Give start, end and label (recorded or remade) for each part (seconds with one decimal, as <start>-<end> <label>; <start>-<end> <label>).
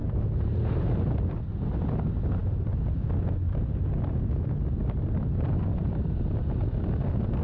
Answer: 0.0-1.4 remade; 1.4-7.4 recorded